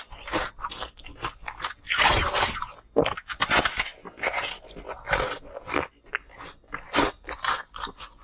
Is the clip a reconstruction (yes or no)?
no